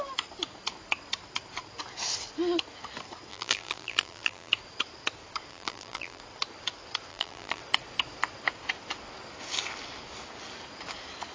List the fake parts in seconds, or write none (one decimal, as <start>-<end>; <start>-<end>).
3.3-4.5; 5.5-6.2; 7.1-7.6